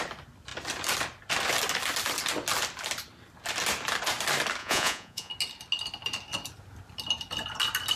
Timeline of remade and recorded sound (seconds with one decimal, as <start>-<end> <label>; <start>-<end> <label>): 0.0-4.6 recorded; 4.6-5.3 remade; 5.3-8.0 recorded